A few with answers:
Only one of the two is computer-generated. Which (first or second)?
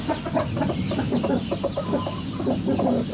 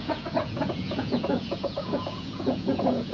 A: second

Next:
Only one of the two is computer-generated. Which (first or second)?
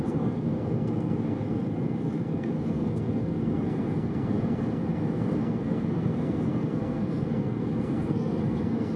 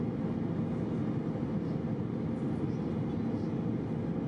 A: first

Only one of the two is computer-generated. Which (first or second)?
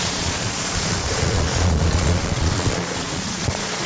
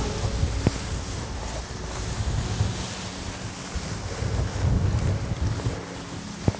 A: first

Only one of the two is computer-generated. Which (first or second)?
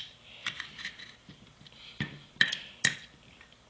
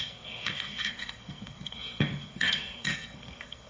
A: second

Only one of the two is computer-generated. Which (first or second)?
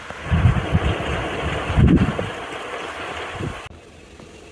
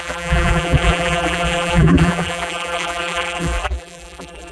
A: second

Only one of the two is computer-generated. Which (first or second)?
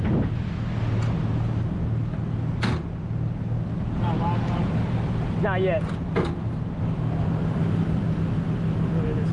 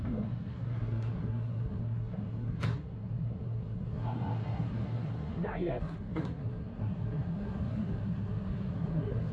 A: second